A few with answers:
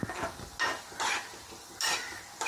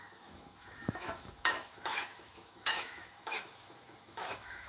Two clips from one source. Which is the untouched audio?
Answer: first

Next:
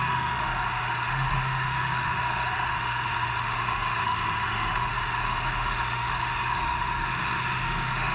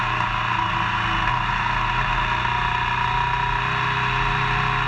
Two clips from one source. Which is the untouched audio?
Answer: second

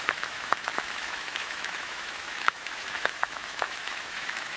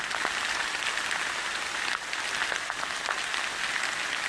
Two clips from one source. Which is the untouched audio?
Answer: second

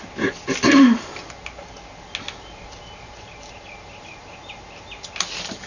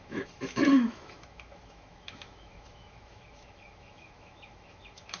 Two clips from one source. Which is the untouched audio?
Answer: first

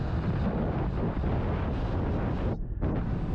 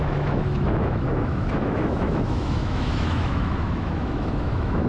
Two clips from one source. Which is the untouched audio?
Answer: first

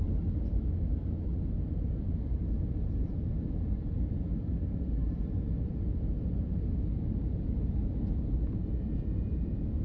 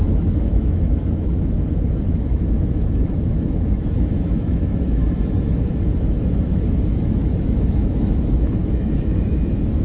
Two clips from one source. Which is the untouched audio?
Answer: first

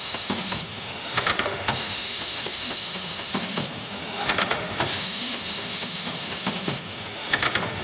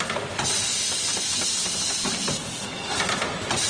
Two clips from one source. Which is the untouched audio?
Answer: second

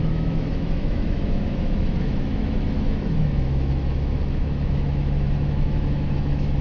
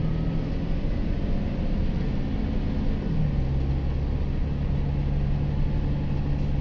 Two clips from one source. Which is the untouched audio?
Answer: second